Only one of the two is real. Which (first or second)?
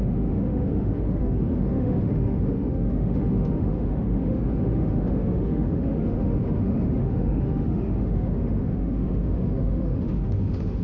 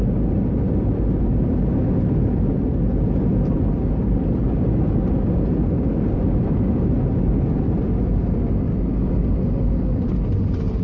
second